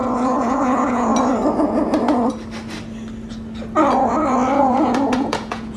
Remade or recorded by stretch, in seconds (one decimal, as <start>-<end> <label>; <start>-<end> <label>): 0.0-1.1 remade; 1.1-4.6 recorded; 4.6-5.8 remade